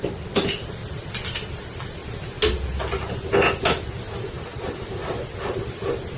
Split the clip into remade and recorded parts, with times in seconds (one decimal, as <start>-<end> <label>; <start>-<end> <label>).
0.0-6.2 recorded